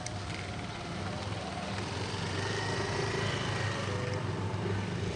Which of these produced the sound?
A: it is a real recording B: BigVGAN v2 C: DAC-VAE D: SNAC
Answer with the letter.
A